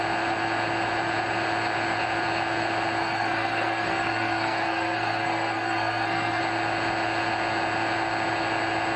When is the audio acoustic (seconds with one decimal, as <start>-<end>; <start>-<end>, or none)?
0.0-3.0; 6.4-9.0